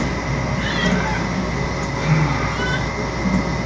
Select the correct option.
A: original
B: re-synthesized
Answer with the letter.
A